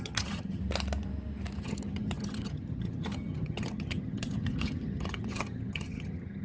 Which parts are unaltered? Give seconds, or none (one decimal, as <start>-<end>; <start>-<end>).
0.6-1.6